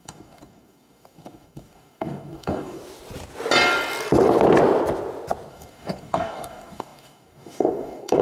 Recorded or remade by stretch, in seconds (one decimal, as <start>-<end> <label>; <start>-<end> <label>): 0.0-2.8 remade; 2.8-5.5 recorded; 5.5-8.2 remade